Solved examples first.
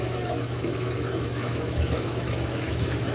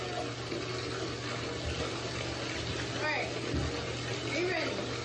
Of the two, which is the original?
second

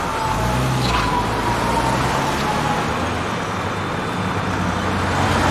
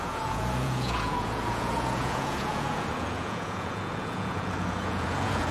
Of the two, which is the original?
first